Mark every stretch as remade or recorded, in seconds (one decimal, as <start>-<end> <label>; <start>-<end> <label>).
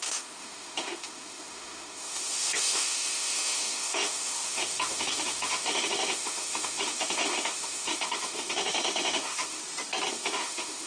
0.0-9.6 remade; 9.6-10.1 recorded; 10.1-10.9 remade